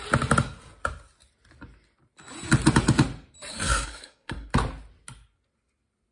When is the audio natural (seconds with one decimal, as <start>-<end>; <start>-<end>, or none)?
0.0-3.5; 4.5-6.1